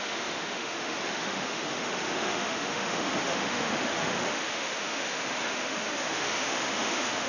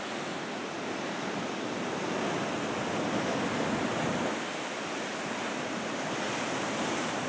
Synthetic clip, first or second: first